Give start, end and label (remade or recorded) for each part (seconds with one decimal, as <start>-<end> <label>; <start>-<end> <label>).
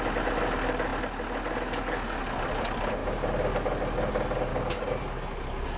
0.0-4.5 recorded; 4.5-5.0 remade; 5.0-5.8 recorded